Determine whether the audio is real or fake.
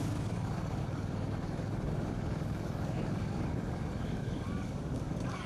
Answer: fake